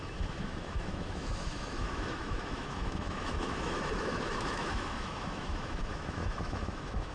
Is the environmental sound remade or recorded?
remade